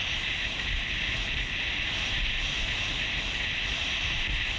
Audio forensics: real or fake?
real